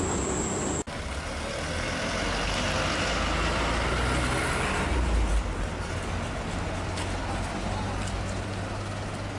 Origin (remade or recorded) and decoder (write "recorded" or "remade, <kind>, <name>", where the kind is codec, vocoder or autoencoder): recorded